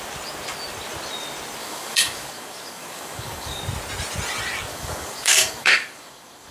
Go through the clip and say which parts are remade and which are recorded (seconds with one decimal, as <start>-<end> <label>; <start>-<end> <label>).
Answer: 0.0-1.6 recorded; 1.6-3.6 remade; 3.6-4.7 recorded; 4.7-6.5 remade